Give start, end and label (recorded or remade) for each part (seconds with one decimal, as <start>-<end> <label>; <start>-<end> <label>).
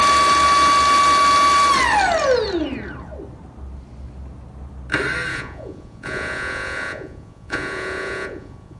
0.0-5.3 recorded; 5.3-8.8 remade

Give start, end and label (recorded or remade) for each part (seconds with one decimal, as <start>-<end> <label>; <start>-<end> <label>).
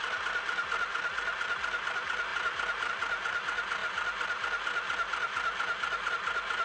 0.0-6.6 recorded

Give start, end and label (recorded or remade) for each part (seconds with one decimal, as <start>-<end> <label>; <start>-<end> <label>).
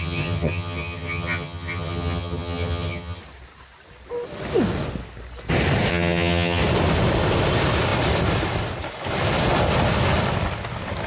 0.0-3.2 remade; 3.2-5.9 recorded; 5.9-6.6 remade; 6.6-11.1 recorded